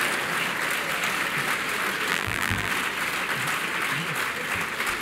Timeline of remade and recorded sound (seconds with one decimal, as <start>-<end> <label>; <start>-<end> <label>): 0.0-2.1 recorded; 2.1-2.7 remade; 2.7-5.0 recorded